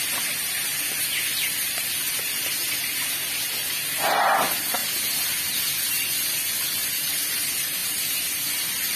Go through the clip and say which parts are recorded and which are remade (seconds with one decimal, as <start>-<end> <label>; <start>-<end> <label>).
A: 0.0-9.0 recorded